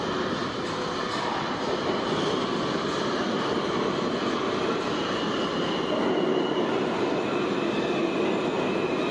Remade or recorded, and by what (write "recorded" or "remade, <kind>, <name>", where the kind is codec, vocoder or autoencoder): recorded